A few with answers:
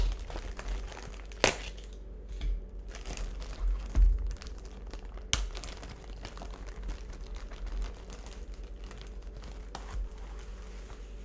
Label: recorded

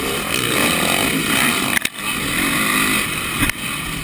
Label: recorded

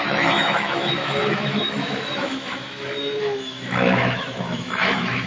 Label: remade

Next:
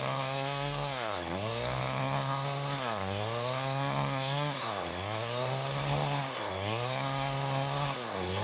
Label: remade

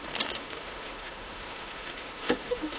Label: remade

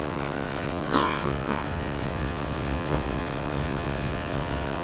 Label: remade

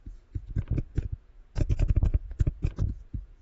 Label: remade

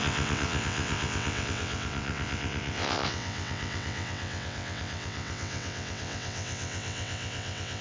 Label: remade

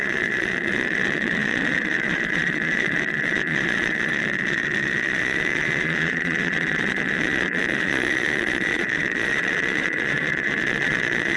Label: remade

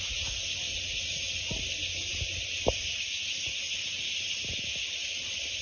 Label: recorded